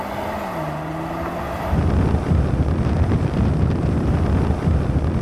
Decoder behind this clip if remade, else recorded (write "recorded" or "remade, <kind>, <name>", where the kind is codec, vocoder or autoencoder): recorded